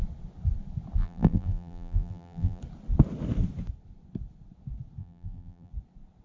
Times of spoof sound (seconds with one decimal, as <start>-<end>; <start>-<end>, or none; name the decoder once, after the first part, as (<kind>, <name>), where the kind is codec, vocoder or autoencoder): 1.0-2.6 (vocoder, BigVGAN v2); 5.0-5.7

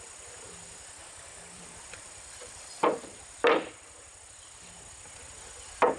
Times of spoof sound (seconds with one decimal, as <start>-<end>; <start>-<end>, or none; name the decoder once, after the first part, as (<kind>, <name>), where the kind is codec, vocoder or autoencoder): 1.0-3.3 (vocoder, BigVGAN v2)